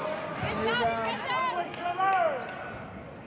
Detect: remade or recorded recorded